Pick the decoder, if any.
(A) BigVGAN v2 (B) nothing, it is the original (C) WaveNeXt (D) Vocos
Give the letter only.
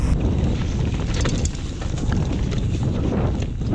B